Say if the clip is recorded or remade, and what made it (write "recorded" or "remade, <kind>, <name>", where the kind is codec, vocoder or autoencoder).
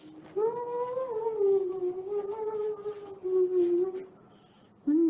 recorded